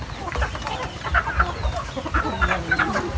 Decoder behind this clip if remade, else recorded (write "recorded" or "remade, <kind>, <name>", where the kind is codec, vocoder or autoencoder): recorded